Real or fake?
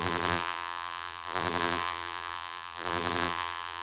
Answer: fake